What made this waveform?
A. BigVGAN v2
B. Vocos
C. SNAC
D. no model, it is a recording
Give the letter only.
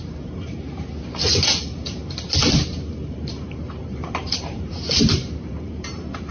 A